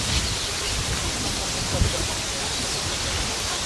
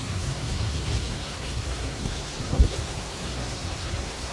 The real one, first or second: first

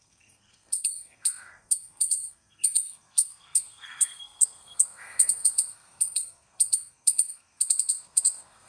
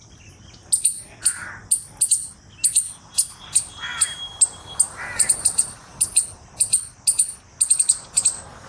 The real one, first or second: second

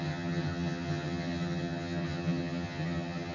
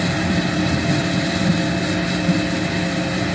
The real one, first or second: second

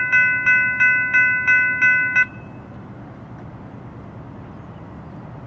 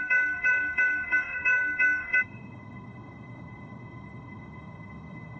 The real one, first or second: first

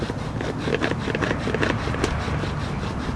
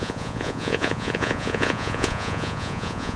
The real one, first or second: first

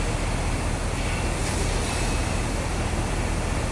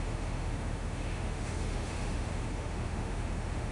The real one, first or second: first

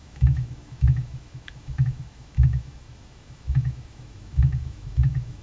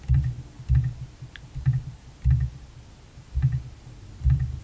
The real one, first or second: second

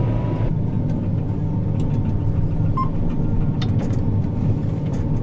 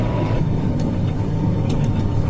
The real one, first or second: first